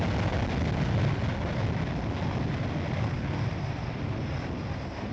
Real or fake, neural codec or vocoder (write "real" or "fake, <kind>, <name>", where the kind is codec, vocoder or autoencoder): real